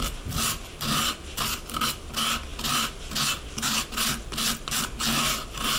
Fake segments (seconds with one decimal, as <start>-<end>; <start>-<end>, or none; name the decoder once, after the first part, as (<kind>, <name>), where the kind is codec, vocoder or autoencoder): none